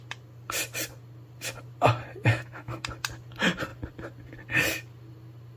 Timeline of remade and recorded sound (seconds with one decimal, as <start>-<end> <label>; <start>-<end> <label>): 0.0-2.3 recorded; 2.3-2.8 remade; 2.8-5.6 recorded